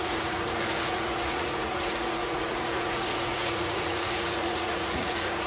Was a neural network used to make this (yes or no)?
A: yes